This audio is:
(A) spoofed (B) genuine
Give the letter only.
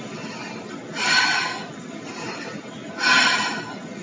B